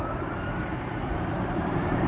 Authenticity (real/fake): fake